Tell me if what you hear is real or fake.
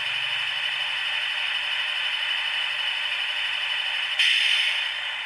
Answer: real